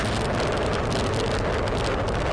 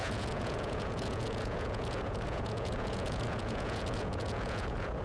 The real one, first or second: first